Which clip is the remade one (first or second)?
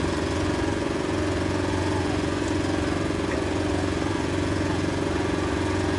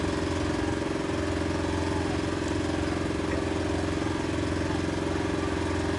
first